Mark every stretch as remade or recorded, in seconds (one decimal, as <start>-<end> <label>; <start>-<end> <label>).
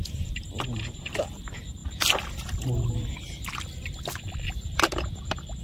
0.0-1.8 remade; 1.8-5.6 recorded